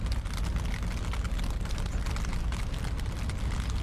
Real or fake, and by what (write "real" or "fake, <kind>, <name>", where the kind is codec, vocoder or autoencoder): real